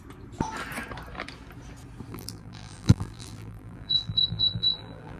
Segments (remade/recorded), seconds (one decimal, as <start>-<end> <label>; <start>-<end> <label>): 0.0-2.1 recorded; 2.1-5.2 remade